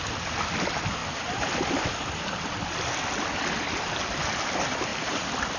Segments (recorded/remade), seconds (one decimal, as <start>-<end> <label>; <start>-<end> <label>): 0.0-4.9 recorded; 4.9-5.6 remade

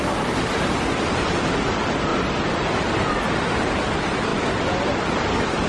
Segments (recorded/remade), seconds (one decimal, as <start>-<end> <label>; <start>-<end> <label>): 0.0-2.1 remade; 2.1-2.9 recorded; 2.9-4.3 remade; 4.3-5.1 recorded; 5.1-5.7 remade

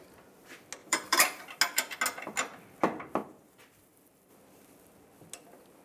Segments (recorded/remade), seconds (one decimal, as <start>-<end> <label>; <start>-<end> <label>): 0.0-0.8 recorded; 0.8-1.6 remade; 1.6-3.2 recorded; 3.2-4.3 remade; 4.3-5.8 recorded